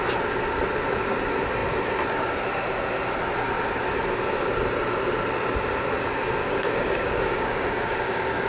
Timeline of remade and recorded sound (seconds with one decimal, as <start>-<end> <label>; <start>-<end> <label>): 0.0-6.4 recorded; 6.4-8.5 remade

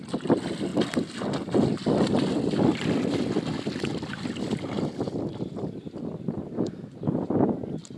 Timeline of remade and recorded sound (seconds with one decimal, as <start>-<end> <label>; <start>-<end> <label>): 0.0-8.0 recorded

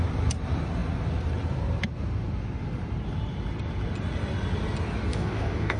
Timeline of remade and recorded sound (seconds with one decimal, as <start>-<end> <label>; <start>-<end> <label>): 0.0-5.1 recorded; 5.1-5.8 remade

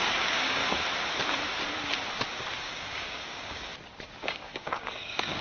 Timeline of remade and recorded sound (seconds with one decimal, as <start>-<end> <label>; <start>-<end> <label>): 0.0-0.6 remade; 0.6-2.6 recorded; 2.6-3.7 remade; 3.7-4.2 recorded; 4.2-5.4 remade

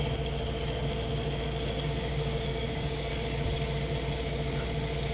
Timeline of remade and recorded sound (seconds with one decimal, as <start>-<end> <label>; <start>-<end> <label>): 0.0-2.1 recorded; 2.1-3.1 remade; 3.1-5.1 recorded